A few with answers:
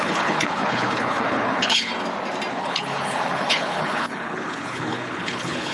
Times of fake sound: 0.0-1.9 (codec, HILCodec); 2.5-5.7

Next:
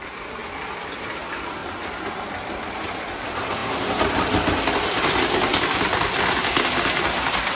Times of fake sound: 0.0-0.4 (vocoder, BigVGAN v2); 1.0-1.6; 2.4-7.5

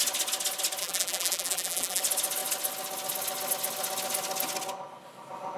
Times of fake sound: 0.8-2.0 (vocoder, BigVGAN v2)

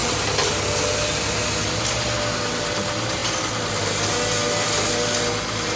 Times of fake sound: none

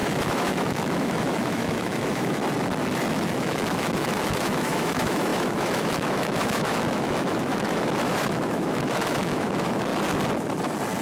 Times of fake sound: 0.0-2.4 (autoencoder, DAC-VAE); 3.1-9.9

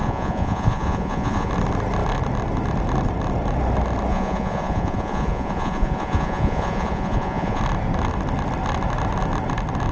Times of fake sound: 0.0-1.5 (vocoder, Vocos); 4.1-7.6

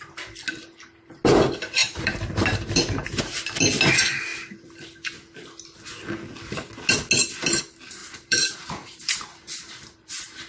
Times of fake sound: 1.8-3.3 (vocoder, BigVGAN v2); 8.0-10.5